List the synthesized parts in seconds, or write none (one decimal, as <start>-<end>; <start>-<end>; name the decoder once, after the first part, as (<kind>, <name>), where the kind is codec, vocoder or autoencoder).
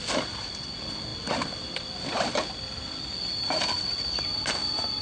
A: none